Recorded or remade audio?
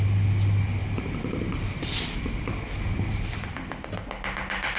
recorded